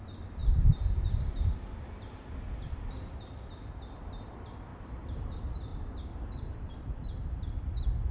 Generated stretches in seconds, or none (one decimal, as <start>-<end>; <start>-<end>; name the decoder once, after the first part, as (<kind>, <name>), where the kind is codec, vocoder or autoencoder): 0.4-2.3 (vocoder, BigVGAN v2); 4.7-5.2; 5.7-6.7